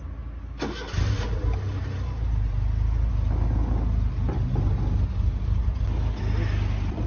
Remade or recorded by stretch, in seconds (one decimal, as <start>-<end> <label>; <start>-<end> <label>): 0.0-7.1 recorded